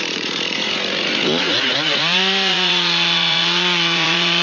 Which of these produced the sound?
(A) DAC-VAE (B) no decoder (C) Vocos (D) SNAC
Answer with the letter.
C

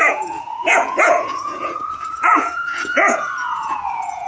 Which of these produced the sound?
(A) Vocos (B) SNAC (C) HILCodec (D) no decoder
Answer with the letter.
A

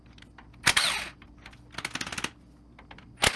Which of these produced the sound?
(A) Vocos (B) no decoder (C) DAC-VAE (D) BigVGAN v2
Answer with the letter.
B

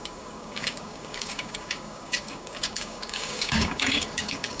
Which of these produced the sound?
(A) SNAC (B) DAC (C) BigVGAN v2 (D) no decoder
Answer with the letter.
B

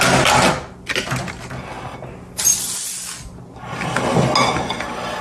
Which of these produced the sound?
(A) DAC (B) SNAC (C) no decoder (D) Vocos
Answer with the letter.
C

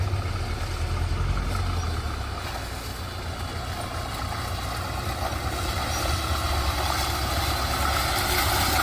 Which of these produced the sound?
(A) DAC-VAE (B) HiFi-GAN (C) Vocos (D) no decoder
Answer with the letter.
D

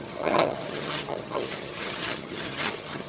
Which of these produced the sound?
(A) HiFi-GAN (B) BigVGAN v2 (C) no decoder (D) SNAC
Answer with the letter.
A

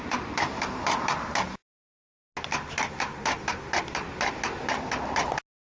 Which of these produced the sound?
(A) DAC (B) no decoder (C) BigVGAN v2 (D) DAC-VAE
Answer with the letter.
B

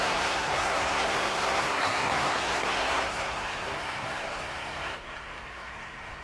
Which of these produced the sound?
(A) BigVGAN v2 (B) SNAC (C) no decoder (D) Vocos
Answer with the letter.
B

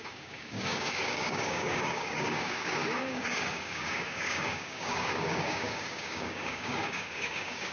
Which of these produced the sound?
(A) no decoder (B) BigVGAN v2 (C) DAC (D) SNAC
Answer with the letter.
C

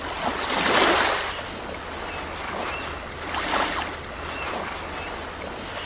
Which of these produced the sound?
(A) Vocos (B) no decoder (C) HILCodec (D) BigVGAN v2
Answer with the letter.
B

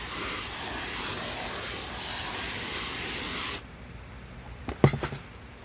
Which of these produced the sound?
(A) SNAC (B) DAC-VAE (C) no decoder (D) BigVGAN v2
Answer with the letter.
C